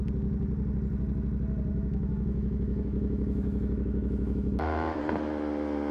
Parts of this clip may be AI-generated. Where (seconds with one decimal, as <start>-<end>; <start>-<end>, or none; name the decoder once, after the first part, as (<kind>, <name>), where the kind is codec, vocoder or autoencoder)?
1.7-5.0 (autoencoder, DAC-VAE)